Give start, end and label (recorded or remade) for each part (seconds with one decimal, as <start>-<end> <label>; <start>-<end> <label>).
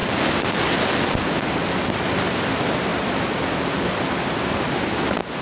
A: 0.0-5.4 recorded